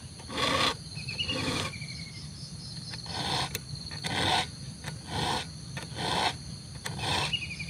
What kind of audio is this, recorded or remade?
recorded